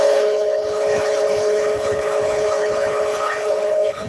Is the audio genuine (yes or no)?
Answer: no